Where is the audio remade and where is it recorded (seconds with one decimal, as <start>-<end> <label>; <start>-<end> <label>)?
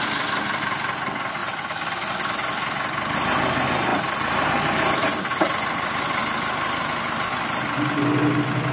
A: 0.0-8.7 recorded